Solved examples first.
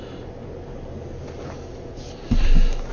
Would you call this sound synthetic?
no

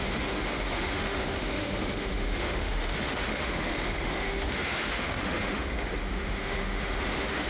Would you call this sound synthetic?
yes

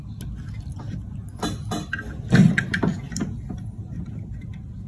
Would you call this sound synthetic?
no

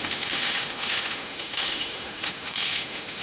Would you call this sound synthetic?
yes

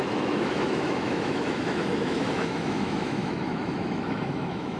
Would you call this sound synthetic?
yes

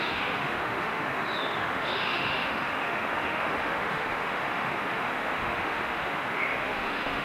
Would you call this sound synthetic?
yes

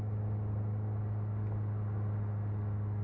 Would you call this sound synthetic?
no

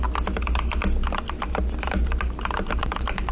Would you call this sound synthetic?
no